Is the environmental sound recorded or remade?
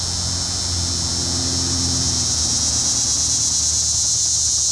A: recorded